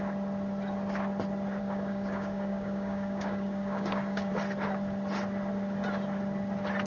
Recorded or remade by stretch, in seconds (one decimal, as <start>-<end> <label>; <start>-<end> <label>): 0.0-1.6 recorded; 1.6-4.3 remade; 4.3-6.9 recorded